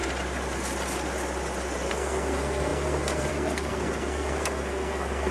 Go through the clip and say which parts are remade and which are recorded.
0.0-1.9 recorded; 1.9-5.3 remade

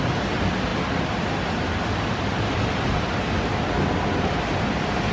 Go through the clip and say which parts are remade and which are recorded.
0.0-5.1 recorded

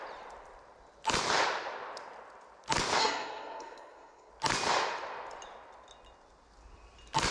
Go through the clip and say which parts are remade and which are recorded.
0.0-3.0 recorded; 3.0-4.3 remade; 4.3-7.3 recorded

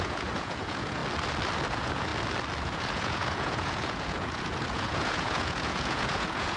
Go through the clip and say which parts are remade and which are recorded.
0.0-1.0 remade; 1.0-1.7 recorded; 1.7-2.1 remade; 2.1-2.6 recorded; 2.6-6.6 remade

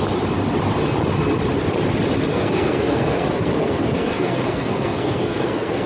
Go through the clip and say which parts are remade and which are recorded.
0.0-2.3 recorded; 2.3-5.9 remade

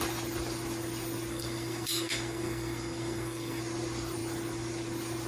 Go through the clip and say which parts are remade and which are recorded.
0.0-1.3 recorded; 1.3-3.6 remade; 3.6-5.3 recorded

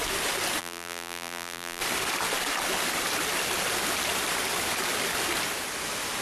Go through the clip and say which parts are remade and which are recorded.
0.0-0.6 recorded; 0.6-1.8 remade; 1.8-6.2 recorded